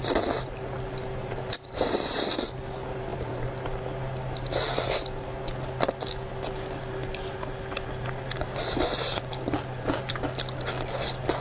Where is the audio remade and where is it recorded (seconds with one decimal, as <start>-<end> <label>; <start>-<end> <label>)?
0.0-1.2 recorded; 1.2-2.4 remade; 2.4-3.1 recorded; 3.1-3.6 remade; 3.6-11.4 recorded